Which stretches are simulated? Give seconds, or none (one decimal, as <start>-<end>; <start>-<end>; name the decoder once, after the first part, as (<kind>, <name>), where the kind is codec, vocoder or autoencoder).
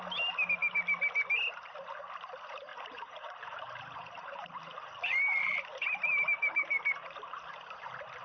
2.7-7.5 (vocoder, BigVGAN v2)